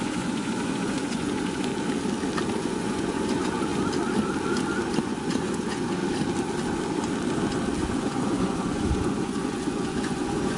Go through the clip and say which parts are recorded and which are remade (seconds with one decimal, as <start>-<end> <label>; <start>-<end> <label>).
0.0-1.7 remade; 1.7-2.6 recorded; 2.6-3.7 remade; 3.7-5.0 recorded; 5.0-6.0 remade; 6.0-7.9 recorded; 7.9-10.6 remade